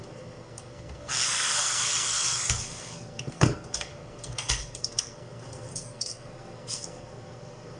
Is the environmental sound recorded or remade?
remade